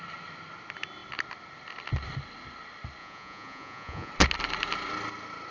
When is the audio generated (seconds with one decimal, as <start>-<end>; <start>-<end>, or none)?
3.0-4.1